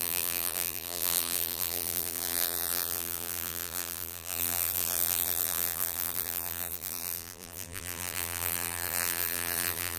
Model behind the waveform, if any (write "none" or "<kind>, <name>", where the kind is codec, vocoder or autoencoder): vocoder, BigVGAN v2